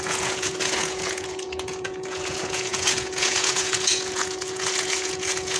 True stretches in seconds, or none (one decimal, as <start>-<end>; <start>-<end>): none